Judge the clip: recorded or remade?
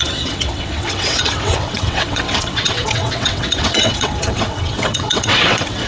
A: remade